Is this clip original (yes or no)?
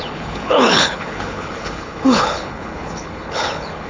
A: no